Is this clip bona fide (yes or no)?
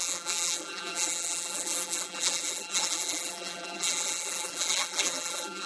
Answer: no